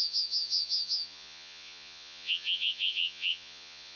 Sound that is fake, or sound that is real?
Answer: fake